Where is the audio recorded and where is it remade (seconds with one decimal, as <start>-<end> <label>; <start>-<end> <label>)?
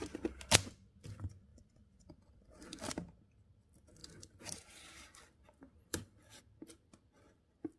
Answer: 0.0-1.5 recorded; 1.5-2.8 remade; 2.8-4.0 recorded; 4.0-6.4 remade; 6.4-7.8 recorded